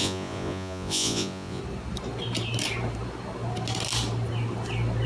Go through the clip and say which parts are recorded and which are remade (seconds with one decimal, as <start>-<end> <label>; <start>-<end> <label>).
0.0-1.6 remade; 1.6-5.1 recorded